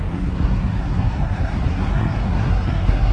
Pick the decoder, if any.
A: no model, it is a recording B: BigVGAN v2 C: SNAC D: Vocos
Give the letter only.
C